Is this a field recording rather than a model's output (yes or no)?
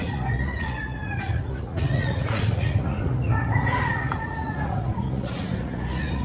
no